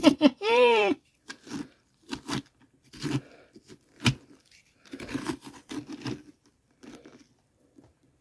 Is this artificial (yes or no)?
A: yes